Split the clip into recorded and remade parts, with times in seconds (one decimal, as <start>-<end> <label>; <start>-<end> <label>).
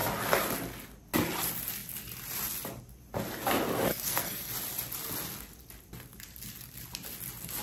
0.0-3.9 recorded; 3.9-4.5 remade; 4.5-7.6 recorded